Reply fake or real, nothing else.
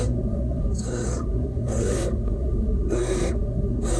fake